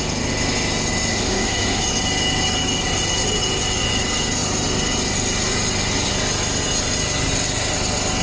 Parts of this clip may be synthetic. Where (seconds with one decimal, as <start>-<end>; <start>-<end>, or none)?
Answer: 1.1-1.8